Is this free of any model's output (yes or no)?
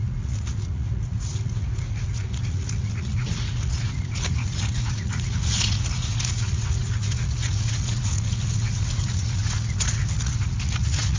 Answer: no